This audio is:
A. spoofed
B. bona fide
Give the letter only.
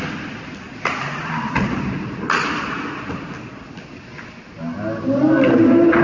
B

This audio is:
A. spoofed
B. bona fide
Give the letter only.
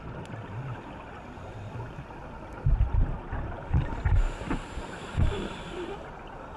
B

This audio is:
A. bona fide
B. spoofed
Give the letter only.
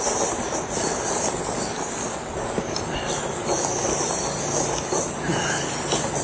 A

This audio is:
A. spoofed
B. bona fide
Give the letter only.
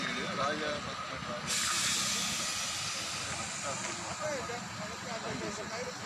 B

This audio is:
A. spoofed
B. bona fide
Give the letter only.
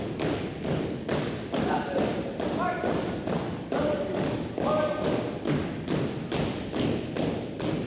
B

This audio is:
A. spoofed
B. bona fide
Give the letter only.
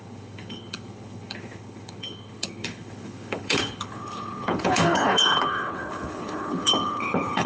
A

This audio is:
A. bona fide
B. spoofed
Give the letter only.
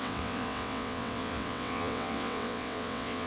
B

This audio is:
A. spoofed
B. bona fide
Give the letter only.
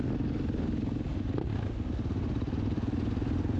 B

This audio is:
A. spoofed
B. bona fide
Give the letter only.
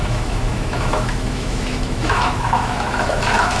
A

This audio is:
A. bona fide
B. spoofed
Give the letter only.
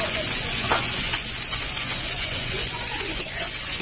B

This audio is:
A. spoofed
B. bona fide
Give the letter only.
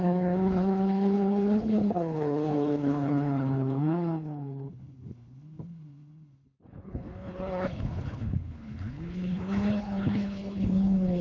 A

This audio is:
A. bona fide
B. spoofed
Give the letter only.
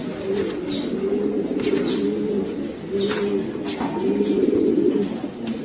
A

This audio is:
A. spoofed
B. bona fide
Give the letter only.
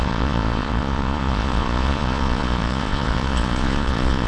A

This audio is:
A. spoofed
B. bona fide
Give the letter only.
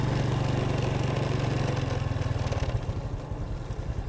B